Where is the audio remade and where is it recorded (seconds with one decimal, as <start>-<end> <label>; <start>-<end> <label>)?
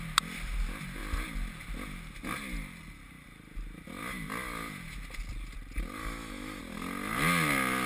0.0-6.0 recorded; 6.0-6.6 remade; 6.6-7.9 recorded